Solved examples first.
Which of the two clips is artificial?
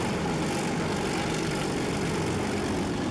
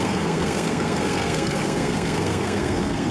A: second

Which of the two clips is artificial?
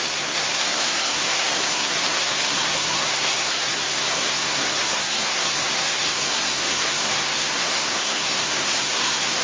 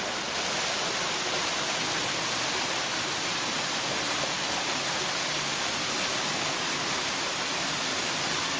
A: first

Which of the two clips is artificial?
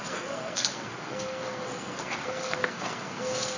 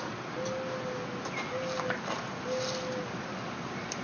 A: first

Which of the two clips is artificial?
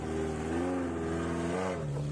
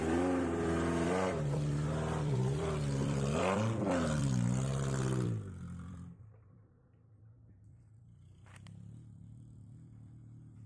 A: second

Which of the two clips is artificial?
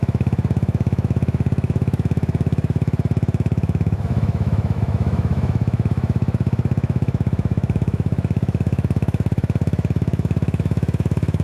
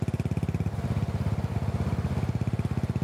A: first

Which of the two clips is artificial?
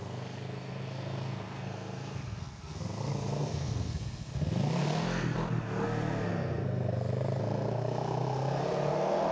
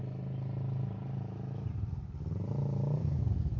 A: first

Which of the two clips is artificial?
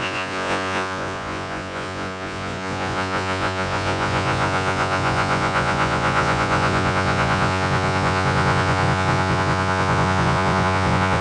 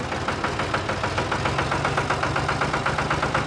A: first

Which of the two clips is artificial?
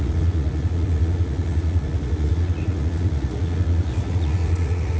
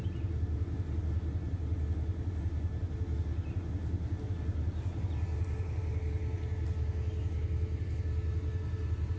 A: first